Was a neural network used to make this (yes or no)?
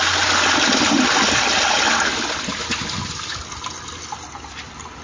no